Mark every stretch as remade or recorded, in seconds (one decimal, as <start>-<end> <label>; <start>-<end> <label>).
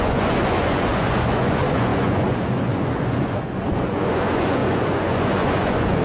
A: 0.0-6.0 remade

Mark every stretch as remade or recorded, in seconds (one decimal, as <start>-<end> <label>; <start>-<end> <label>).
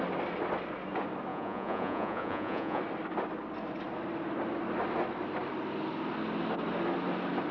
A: 0.0-1.3 recorded; 1.3-2.8 remade; 2.8-7.5 recorded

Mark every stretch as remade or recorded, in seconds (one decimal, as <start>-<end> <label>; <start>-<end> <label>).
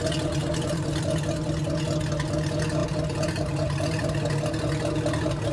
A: 0.0-0.4 recorded; 0.4-1.0 remade; 1.0-2.8 recorded; 2.8-4.3 remade; 4.3-5.5 recorded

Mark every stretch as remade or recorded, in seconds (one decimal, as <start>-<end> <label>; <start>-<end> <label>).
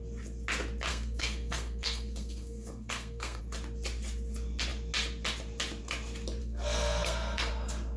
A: 0.0-0.9 recorded; 0.9-3.4 remade; 3.4-6.4 recorded; 6.4-7.5 remade; 7.5-8.0 recorded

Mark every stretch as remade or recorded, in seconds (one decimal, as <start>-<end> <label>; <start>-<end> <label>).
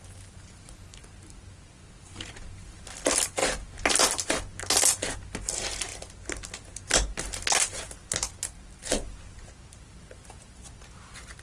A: 0.0-11.4 recorded